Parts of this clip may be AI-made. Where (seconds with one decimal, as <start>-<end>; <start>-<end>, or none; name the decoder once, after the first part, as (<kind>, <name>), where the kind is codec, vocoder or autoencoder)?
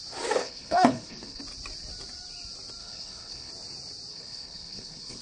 0.4-1.4 (codec, HILCodec); 2.8-3.5; 4.1-5.2